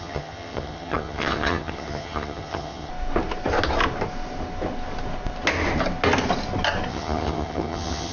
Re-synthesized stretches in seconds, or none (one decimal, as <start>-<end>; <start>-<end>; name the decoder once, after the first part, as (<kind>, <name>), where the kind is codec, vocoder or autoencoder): 0.0-2.9 (vocoder, HiFi-GAN); 6.9-8.1